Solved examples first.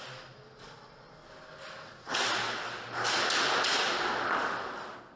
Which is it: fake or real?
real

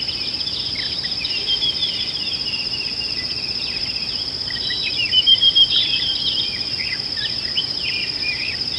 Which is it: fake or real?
fake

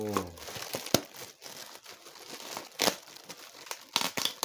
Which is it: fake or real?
real